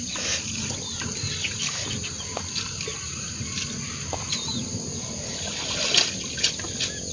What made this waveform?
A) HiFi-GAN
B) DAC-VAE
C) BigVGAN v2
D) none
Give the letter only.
D